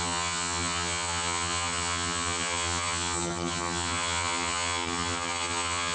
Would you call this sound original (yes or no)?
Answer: no